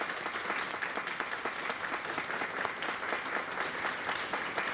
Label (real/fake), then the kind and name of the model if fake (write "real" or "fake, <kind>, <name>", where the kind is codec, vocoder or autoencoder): real